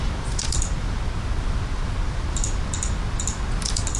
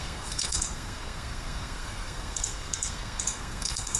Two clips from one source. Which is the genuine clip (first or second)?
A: first